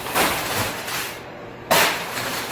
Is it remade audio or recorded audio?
remade